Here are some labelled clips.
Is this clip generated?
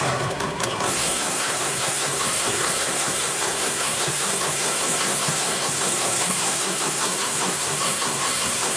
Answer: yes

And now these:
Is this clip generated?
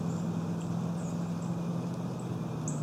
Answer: no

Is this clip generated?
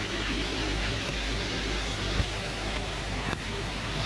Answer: yes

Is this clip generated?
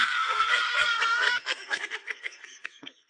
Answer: yes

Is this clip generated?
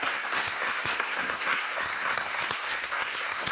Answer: yes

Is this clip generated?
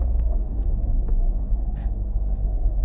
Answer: yes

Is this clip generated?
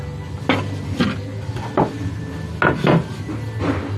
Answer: no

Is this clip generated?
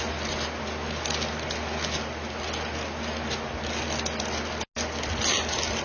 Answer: no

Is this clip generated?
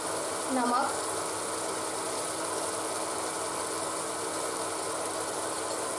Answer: no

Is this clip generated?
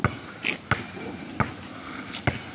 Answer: no